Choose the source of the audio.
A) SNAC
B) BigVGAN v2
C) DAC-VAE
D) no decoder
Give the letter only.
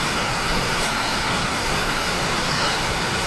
A